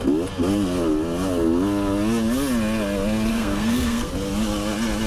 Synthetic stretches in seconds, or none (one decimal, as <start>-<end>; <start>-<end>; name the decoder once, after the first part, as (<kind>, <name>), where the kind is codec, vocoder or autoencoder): 3.3-4.1 (codec, SNAC)